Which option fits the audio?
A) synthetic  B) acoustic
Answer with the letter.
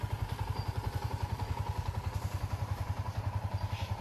A